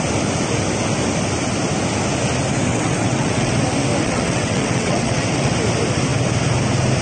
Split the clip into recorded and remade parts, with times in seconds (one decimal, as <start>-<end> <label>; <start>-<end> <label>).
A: 0.0-2.7 recorded; 2.7-3.5 remade; 3.5-4.0 recorded; 4.0-5.5 remade; 5.5-7.0 recorded